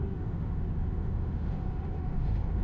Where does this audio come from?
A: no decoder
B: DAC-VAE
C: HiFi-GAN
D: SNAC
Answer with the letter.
B